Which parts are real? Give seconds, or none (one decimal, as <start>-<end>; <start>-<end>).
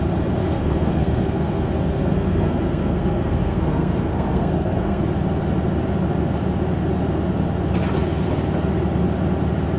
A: 0.0-0.4; 5.0-9.8